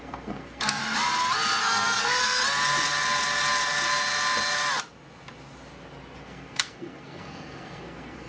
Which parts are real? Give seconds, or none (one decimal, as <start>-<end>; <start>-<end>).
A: 0.8-1.6; 2.4-6.2